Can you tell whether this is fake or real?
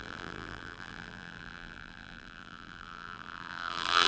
fake